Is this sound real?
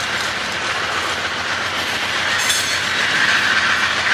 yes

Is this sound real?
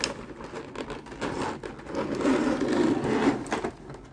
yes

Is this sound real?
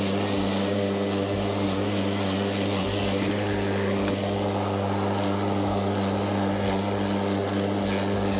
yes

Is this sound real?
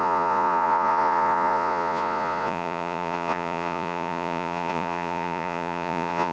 no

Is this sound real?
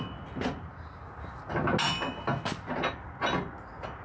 yes